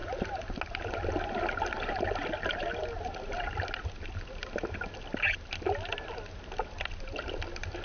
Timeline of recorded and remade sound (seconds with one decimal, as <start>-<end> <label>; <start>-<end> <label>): 0.0-7.8 recorded

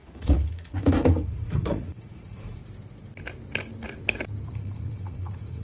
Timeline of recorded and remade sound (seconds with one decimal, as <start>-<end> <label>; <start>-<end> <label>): 0.0-2.6 remade; 2.6-4.5 recorded; 4.5-5.6 remade